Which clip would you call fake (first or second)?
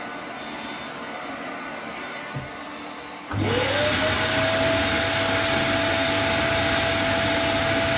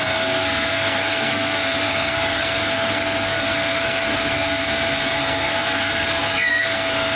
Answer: second